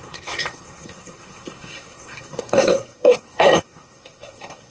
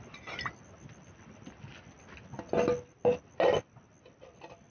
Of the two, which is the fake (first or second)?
first